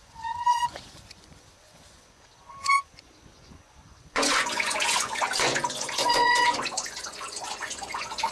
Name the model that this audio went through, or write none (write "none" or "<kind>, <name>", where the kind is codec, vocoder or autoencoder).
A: vocoder, Vocos